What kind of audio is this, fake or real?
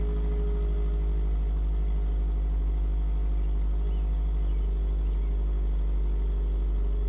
real